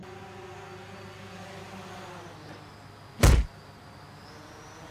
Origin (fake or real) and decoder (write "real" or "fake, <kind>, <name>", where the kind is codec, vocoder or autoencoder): real